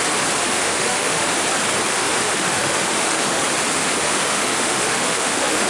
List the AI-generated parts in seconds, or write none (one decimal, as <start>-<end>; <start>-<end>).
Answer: 0.4-1.3; 1.9-3.4; 3.8-5.7